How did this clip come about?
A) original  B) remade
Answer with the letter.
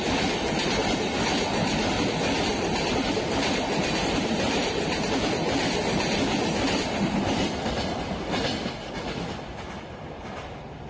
A